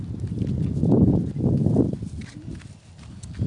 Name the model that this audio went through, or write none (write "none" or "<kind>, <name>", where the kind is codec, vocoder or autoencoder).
none